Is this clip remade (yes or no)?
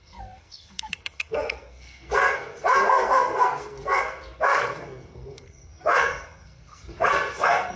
yes